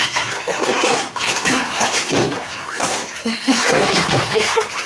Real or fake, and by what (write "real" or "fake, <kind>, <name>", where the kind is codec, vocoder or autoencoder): fake, codec, SNAC